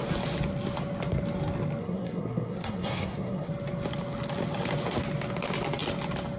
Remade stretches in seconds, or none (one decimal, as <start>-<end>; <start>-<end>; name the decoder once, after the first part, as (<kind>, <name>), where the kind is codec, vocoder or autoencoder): 1.8-3.5 (codec, SNAC)